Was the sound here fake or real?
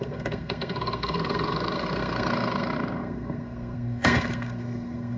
fake